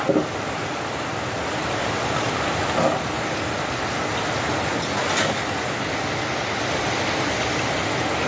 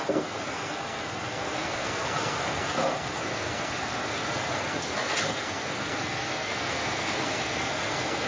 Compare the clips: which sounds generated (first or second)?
second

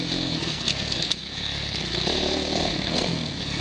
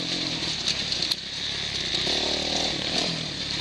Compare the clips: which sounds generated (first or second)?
first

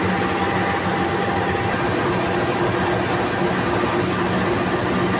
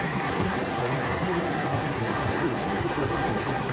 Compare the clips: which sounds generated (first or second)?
second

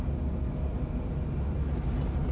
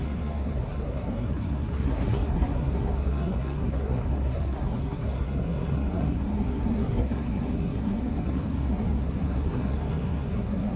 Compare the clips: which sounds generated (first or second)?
second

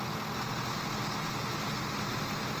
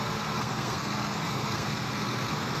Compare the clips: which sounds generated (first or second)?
second